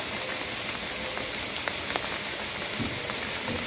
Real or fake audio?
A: real